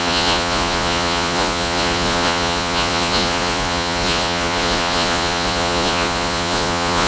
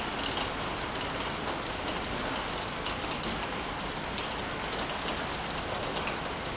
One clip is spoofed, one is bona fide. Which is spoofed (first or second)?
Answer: first